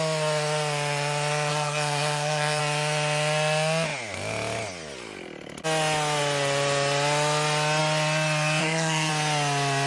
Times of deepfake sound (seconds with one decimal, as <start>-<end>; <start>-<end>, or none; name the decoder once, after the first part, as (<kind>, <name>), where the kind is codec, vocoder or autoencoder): 1.5-2.6 (codec, SNAC); 8.6-9.1